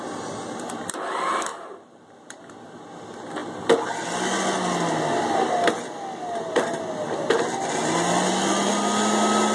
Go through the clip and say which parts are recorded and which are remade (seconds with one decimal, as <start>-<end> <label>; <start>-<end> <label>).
0.0-1.5 recorded; 1.5-2.4 remade; 2.4-9.5 recorded